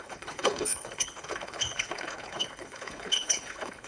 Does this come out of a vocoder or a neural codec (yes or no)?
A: yes